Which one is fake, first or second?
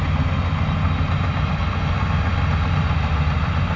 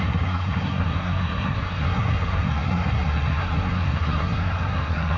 second